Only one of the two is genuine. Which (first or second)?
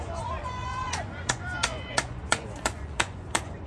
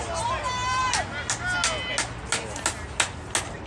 second